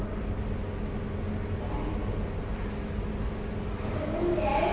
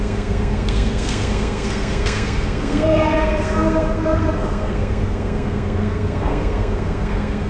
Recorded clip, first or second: first